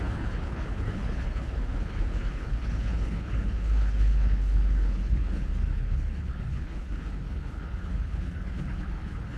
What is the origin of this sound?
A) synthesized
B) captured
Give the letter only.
A